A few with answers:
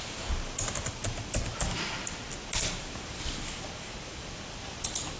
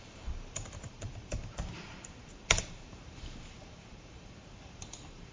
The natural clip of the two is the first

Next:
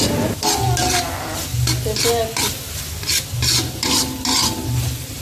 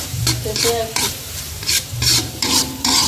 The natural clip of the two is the first